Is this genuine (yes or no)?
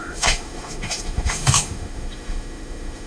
no